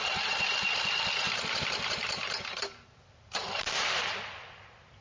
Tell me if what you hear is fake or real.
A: fake